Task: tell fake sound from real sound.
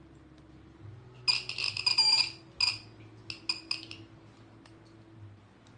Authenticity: real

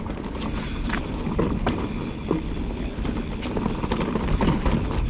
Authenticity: real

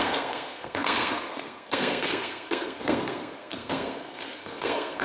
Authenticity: fake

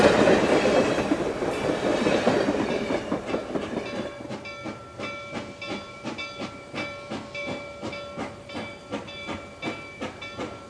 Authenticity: fake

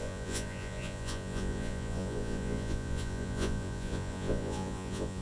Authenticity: fake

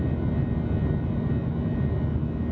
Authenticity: real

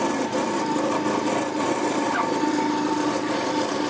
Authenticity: real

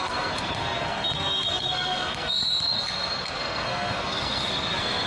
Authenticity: fake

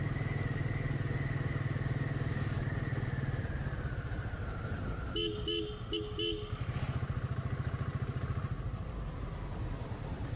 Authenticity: real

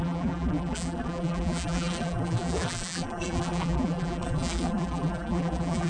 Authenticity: fake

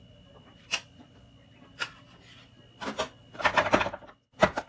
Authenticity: real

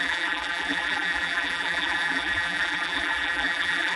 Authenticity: fake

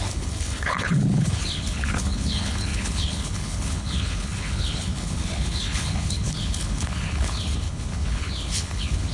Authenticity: fake